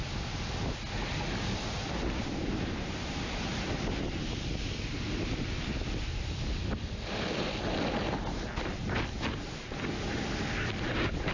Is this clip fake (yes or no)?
no